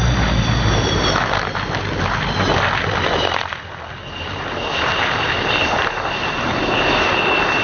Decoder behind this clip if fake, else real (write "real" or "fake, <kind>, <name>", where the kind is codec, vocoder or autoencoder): real